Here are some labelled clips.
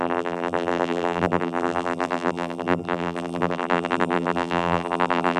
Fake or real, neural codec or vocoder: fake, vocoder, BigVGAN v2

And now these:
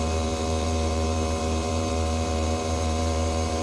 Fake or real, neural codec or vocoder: fake, vocoder, BigVGAN v2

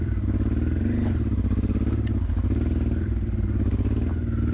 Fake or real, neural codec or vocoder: real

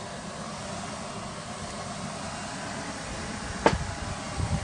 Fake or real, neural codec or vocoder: real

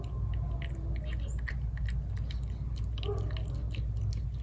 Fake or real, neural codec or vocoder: real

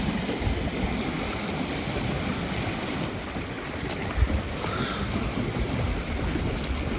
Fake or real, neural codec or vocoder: real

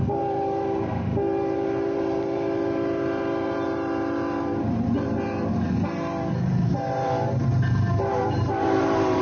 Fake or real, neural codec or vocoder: fake, vocoder, BigVGAN v2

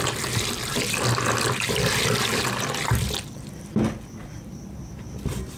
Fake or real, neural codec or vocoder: fake, vocoder, BigVGAN v2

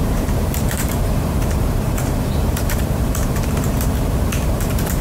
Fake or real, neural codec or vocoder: fake, vocoder, BigVGAN v2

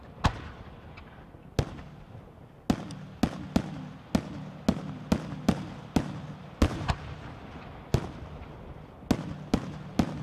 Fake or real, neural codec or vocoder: real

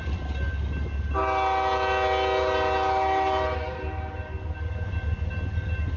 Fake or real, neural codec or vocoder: real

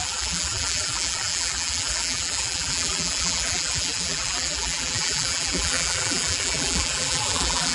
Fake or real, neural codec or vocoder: fake, vocoder, BigVGAN v2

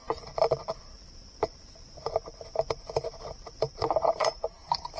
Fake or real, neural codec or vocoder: fake, vocoder, BigVGAN v2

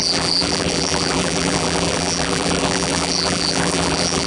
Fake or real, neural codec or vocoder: fake, vocoder, BigVGAN v2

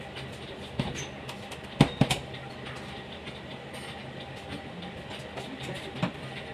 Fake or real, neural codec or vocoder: real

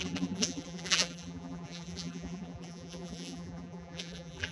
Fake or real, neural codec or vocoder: fake, vocoder, BigVGAN v2